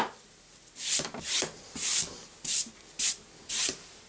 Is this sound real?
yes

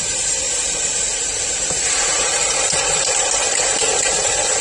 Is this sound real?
no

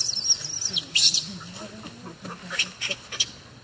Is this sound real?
yes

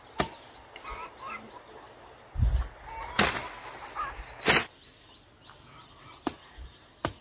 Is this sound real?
yes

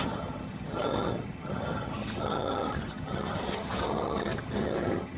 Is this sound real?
no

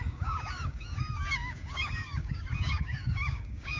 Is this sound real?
no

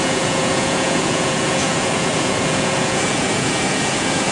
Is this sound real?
no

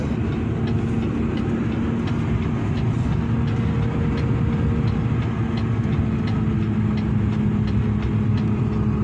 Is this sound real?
yes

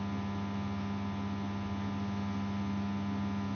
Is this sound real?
yes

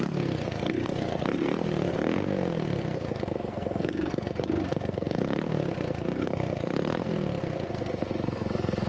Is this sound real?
no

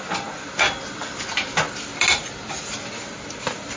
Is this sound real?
yes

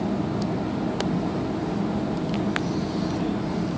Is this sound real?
yes